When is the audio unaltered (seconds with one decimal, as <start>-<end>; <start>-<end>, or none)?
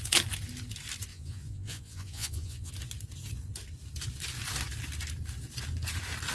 0.0-1.1; 2.7-6.3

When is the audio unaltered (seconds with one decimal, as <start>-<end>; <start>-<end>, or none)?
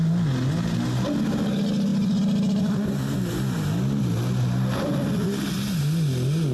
0.0-6.5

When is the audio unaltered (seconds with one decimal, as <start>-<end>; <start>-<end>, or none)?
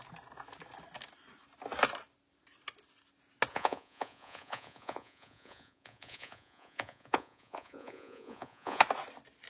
0.0-3.5; 8.8-9.5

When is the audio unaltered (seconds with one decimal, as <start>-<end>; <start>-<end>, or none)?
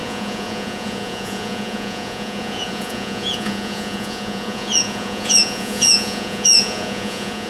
none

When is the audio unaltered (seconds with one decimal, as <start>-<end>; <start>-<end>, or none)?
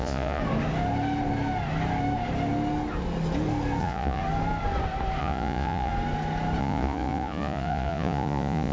0.4-3.8; 4.2-5.2; 5.9-6.6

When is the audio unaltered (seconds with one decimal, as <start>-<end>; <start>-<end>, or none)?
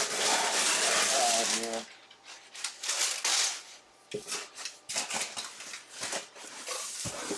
0.0-3.3; 3.9-7.4